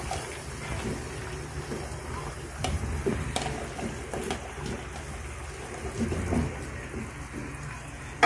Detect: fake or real real